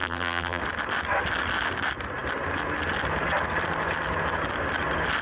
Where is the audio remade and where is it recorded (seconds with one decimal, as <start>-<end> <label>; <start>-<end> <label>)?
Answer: 0.0-0.6 remade; 0.6-5.2 recorded